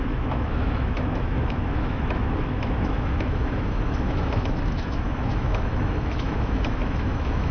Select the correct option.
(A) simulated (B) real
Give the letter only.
A